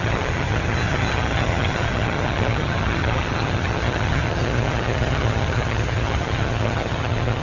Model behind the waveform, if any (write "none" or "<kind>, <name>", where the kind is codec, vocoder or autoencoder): vocoder, HiFi-GAN